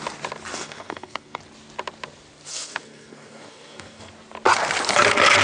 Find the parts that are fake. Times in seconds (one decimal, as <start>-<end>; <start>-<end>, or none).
0.5-1.4; 2.5-4.1

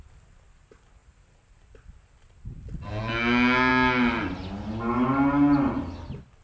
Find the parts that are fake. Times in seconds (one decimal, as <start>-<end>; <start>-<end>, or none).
none